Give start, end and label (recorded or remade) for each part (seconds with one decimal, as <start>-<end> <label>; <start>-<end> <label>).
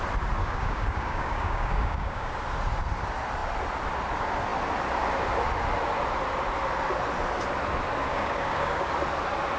0.0-0.4 recorded; 0.4-2.3 remade; 2.3-8.1 recorded; 8.1-8.9 remade; 8.9-9.6 recorded